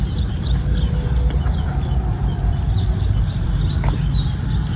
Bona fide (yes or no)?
no